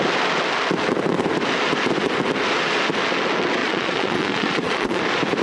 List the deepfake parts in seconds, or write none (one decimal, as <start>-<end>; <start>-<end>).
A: 3.6-5.0